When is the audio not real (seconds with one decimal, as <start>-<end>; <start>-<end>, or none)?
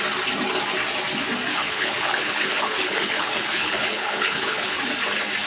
1.5-4.8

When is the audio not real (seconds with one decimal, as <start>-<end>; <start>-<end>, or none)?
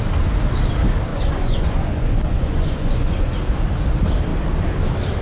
1.1-3.3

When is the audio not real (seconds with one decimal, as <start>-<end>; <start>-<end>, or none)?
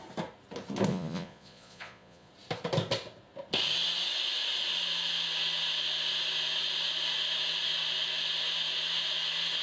0.9-2.3